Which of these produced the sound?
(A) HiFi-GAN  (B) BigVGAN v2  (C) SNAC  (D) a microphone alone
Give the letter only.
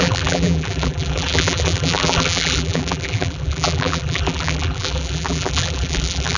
B